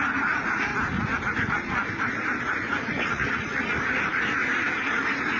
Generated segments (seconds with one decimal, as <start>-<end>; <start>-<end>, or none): 0.0-0.7; 2.4-4.4; 4.9-5.4